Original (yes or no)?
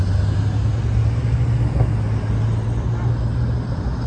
yes